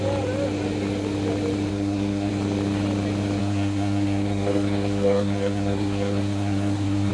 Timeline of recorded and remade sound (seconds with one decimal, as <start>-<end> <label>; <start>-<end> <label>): 0.0-1.7 recorded; 1.7-2.3 remade; 2.3-3.4 recorded; 3.4-7.1 remade